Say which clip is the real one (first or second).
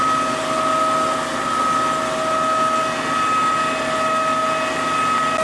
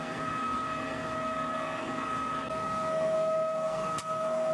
first